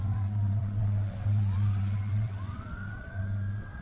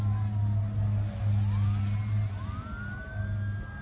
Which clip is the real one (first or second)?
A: second